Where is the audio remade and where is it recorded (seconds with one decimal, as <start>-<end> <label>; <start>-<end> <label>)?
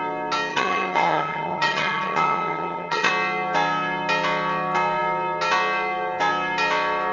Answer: 0.0-0.5 recorded; 0.5-3.1 remade; 3.1-7.1 recorded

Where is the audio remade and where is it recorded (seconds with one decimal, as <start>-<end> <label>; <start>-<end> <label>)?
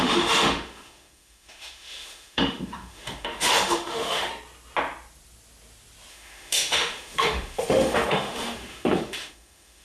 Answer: 0.0-4.3 remade; 4.3-6.1 recorded; 6.1-9.8 remade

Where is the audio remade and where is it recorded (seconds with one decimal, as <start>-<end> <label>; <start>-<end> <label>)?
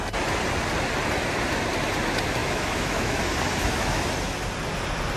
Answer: 0.0-2.4 recorded; 2.4-3.2 remade; 3.2-3.6 recorded; 3.6-4.1 remade; 4.1-5.2 recorded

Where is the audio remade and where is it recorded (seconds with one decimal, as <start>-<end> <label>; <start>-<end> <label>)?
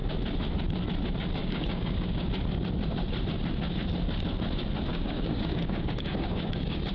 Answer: 0.0-1.4 recorded; 1.4-2.3 remade; 2.3-4.9 recorded; 4.9-6.9 remade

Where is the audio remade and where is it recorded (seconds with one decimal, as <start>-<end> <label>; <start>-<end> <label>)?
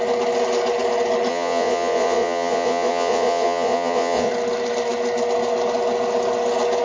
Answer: 0.0-1.3 recorded; 1.3-4.3 remade; 4.3-6.8 recorded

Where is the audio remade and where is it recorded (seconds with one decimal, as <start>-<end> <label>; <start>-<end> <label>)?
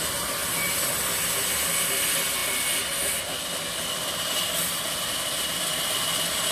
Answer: 0.0-6.5 recorded